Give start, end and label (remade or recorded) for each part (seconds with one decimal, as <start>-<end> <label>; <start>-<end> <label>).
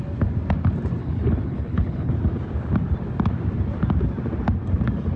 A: 0.0-1.0 recorded; 1.0-2.1 remade; 2.1-5.2 recorded